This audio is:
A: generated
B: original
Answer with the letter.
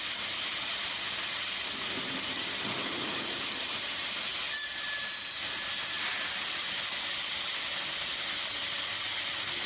B